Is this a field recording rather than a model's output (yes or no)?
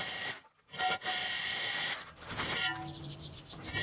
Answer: yes